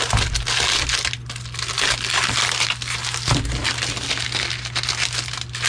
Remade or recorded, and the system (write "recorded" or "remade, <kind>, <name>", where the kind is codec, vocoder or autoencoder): recorded